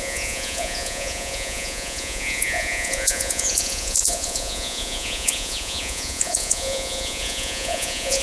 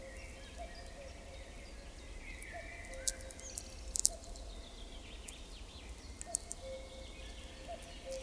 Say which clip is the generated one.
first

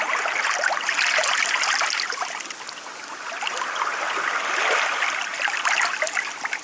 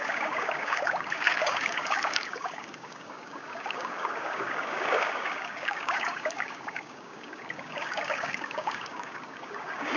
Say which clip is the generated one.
second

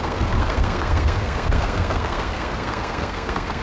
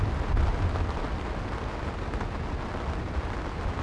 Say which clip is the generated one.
first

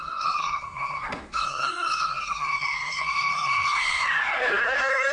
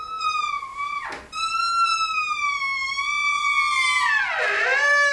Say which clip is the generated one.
first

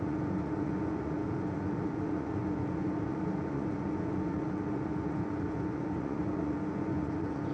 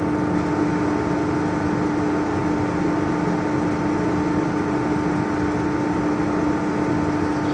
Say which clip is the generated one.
first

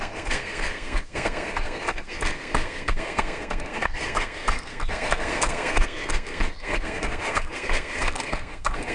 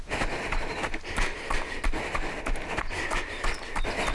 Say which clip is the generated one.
first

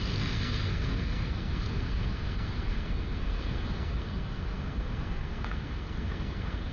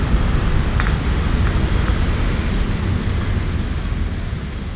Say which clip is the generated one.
first